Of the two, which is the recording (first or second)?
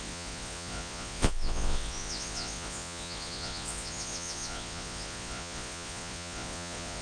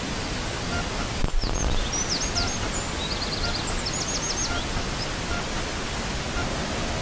second